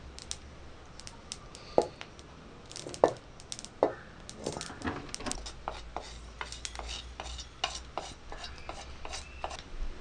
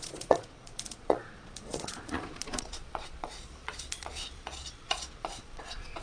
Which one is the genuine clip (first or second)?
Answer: first